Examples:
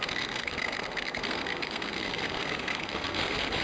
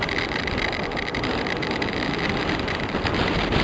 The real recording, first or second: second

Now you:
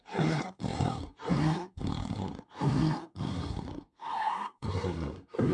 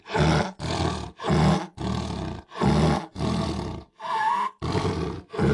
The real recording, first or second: second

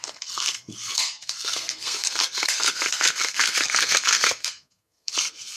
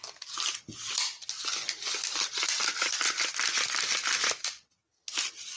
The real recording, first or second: second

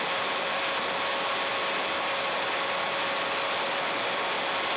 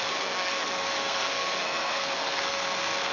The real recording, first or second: first